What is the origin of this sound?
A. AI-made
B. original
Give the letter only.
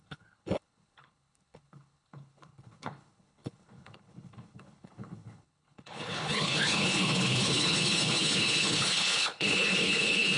A